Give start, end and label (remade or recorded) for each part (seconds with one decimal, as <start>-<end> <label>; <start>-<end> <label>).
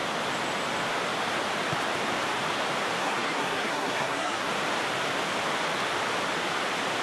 0.0-3.0 recorded; 3.0-4.5 remade; 4.5-7.0 recorded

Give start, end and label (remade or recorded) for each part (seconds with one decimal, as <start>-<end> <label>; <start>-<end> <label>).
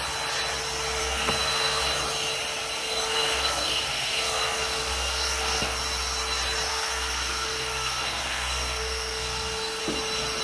0.0-1.0 recorded; 1.0-1.8 remade; 1.8-2.8 recorded; 2.8-5.8 remade; 5.8-6.7 recorded; 6.7-9.8 remade; 9.8-10.4 recorded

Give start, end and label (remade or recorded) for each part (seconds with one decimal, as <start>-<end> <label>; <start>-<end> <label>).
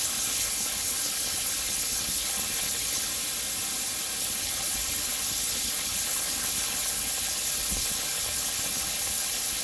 0.0-3.1 remade; 3.1-4.2 recorded; 4.2-9.6 remade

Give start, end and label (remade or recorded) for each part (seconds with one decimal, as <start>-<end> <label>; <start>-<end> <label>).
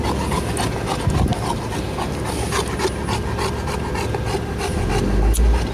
0.0-5.7 recorded